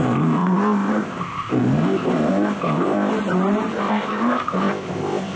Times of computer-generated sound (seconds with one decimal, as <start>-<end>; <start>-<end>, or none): 0.0-3.1; 3.7-5.4